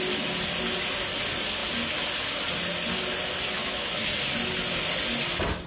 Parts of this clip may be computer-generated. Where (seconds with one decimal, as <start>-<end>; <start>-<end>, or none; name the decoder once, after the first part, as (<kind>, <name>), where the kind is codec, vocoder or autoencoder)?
3.6-4.1 (autoencoder, DAC-VAE)